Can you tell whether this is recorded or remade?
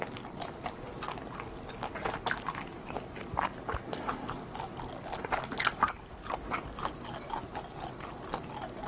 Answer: recorded